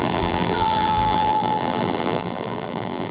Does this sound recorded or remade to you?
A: remade